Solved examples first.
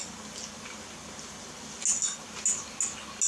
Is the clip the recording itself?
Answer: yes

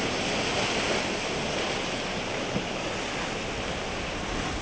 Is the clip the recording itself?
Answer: yes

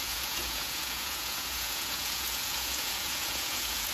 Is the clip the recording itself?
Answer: no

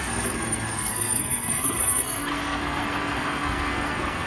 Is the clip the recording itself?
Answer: no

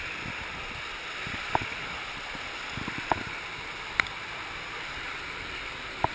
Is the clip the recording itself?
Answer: yes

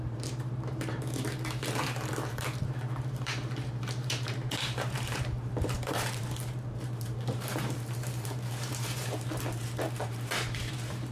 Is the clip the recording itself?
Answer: no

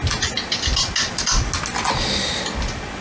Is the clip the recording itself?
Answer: yes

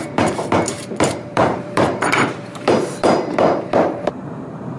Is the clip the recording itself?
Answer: no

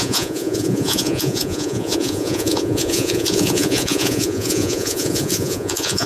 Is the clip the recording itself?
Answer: no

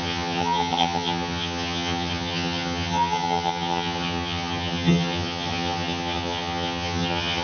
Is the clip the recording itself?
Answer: no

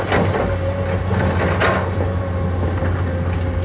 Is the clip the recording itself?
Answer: yes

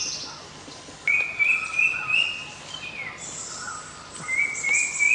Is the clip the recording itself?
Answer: yes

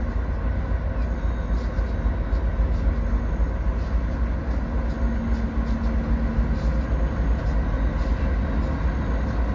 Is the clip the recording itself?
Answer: yes